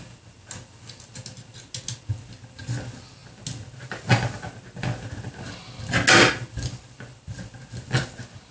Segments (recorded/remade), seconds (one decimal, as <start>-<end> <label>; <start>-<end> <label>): 0.0-8.5 recorded